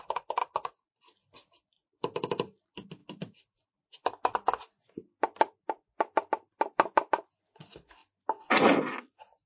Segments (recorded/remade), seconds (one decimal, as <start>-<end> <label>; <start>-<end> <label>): 0.0-0.4 remade; 0.4-1.9 recorded; 1.9-9.5 remade